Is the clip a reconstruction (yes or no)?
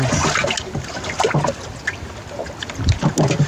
no